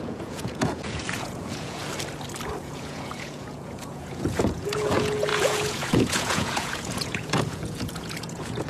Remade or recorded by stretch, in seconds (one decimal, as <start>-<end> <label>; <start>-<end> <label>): 0.0-1.8 remade; 1.8-2.6 recorded; 2.6-8.7 remade